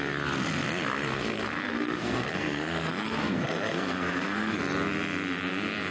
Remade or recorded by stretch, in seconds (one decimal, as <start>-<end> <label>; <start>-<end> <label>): 0.0-1.1 recorded; 1.1-4.6 remade; 4.6-5.9 recorded